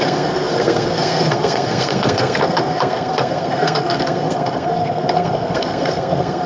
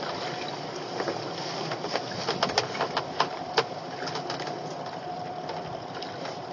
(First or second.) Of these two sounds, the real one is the second